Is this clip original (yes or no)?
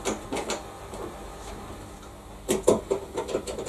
yes